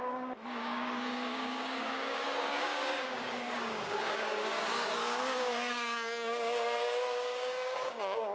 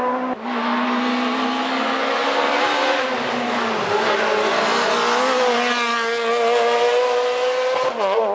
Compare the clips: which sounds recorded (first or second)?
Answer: second